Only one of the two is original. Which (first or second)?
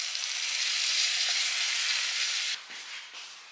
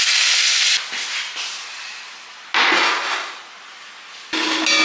second